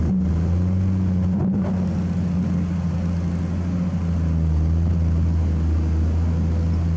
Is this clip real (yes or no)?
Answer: yes